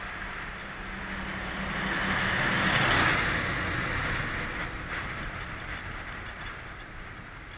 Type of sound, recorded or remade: recorded